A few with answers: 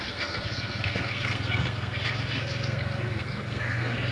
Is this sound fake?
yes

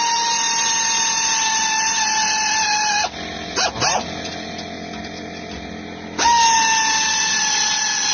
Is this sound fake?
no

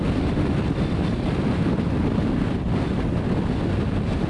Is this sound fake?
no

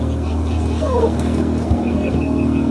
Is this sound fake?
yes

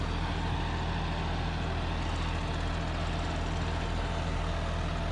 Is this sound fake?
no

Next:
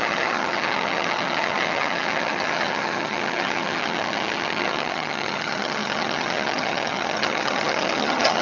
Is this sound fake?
yes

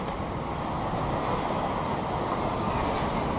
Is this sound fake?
no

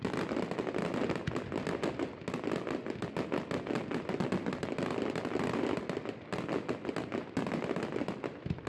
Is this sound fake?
no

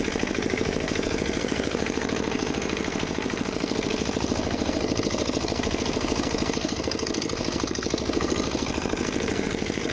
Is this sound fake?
yes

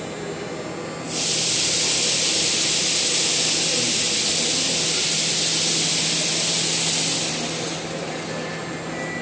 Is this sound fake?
no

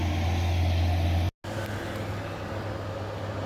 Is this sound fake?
no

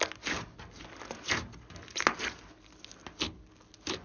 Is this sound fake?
no